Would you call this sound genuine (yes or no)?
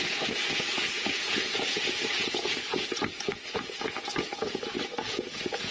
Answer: no